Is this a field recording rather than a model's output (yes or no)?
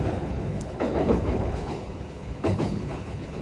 no